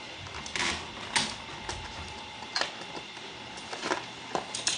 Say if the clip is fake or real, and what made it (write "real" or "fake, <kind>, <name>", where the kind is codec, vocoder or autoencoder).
real